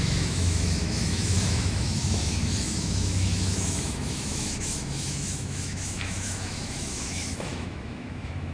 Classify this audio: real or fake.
fake